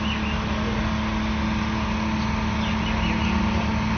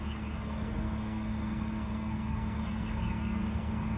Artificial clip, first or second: second